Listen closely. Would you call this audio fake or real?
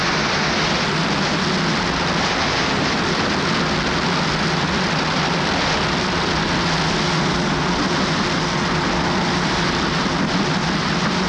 real